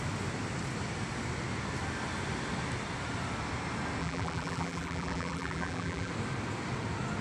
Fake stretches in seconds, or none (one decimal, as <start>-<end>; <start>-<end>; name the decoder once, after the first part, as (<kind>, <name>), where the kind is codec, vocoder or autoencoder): 4.0-6.1 (vocoder, BigVGAN v2)